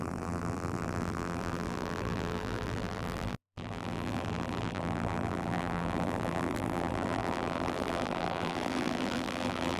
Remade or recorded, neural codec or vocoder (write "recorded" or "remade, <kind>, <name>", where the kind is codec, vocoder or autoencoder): remade, vocoder, BigVGAN v2